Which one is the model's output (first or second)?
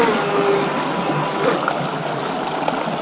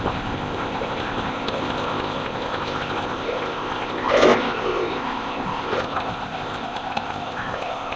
second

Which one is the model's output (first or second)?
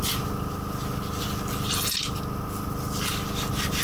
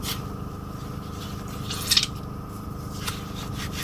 second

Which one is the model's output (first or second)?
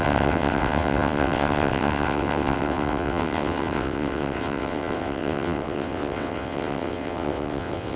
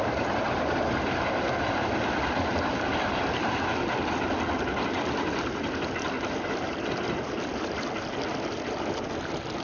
first